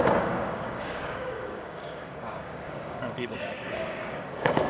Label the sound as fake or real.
fake